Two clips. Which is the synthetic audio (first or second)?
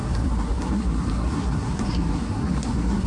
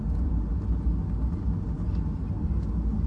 first